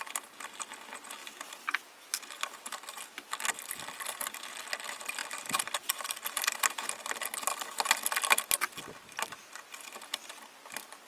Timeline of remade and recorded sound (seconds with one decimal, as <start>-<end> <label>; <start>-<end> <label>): 0.0-1.2 recorded; 1.2-1.9 remade; 1.9-11.1 recorded